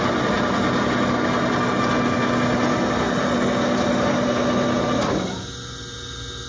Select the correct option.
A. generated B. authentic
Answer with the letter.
B